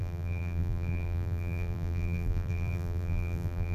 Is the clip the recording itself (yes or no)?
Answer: no